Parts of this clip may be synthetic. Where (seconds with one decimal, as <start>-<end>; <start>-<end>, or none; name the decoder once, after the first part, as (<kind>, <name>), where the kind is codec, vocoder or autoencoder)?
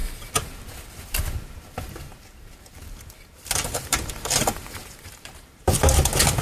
2.1-5.8 (vocoder, BigVGAN v2)